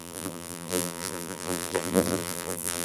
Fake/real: fake